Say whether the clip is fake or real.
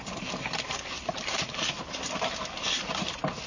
real